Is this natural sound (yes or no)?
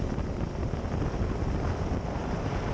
yes